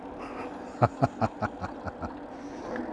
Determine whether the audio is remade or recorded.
recorded